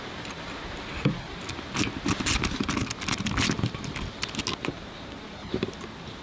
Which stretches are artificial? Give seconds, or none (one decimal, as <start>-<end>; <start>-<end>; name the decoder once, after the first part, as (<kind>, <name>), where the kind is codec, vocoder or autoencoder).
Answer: 0.0-0.9 (vocoder, BigVGAN v2); 4.6-6.2